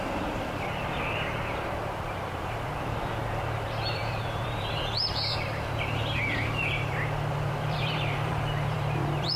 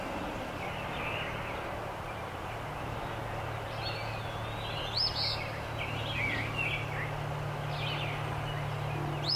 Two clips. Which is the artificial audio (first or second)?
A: first